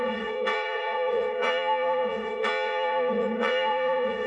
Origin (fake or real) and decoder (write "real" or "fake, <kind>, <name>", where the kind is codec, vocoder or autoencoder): fake, vocoder, Vocos